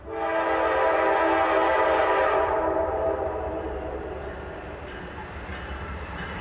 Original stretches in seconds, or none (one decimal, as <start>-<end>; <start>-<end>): 0.0-1.6; 5.1-5.5